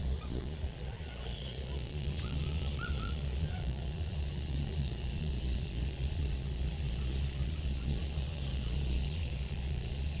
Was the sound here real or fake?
fake